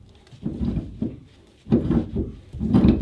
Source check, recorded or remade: recorded